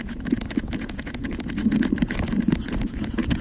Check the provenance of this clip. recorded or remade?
remade